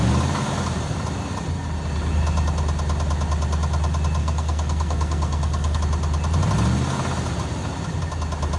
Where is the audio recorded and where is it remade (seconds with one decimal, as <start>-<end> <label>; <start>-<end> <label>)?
0.0-4.2 recorded; 4.2-5.8 remade; 5.8-8.6 recorded